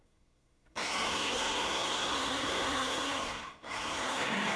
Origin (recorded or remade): remade